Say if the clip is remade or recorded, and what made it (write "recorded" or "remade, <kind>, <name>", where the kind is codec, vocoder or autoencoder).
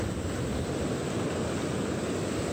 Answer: recorded